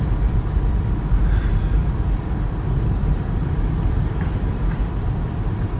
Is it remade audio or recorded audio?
remade